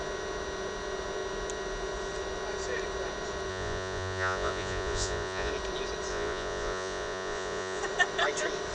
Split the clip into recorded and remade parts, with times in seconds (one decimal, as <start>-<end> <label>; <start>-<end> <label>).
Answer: 0.0-3.5 recorded; 3.5-5.5 remade; 5.5-6.1 recorded; 6.1-7.8 remade; 7.8-8.7 recorded